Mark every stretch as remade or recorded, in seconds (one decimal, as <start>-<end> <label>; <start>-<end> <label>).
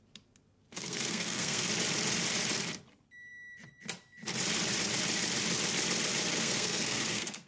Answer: 0.0-0.7 recorded; 0.7-1.7 remade; 1.7-6.3 recorded; 6.3-7.5 remade